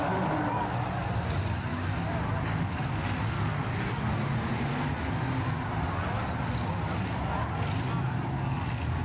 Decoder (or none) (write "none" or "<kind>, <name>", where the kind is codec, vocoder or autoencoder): none